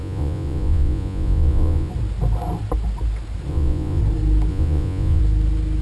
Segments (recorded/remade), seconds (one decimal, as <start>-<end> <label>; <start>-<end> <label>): 0.0-1.9 remade; 1.9-3.5 recorded; 3.5-4.0 remade; 4.0-4.5 recorded; 4.5-5.2 remade; 5.2-5.8 recorded